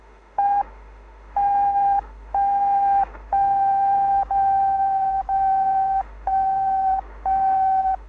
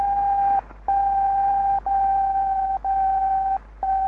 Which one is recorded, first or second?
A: second